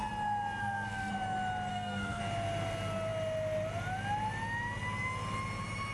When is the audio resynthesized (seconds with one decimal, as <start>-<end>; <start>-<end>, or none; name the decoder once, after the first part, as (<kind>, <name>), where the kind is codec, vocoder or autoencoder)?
0.6-1.1 (codec, SNAC); 1.7-2.2